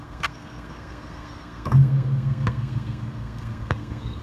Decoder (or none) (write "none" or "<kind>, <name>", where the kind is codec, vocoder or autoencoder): codec, SNAC